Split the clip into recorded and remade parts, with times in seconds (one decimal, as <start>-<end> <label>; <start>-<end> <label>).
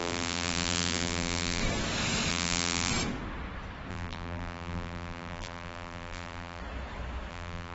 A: 0.0-1.6 remade; 1.6-2.3 recorded; 2.3-2.9 remade; 2.9-3.9 recorded; 3.9-6.6 remade; 6.6-7.3 recorded; 7.3-7.7 remade